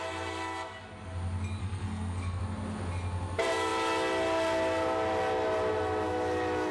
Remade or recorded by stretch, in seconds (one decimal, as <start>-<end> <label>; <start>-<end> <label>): 0.0-1.6 recorded; 1.6-2.4 remade; 2.4-6.7 recorded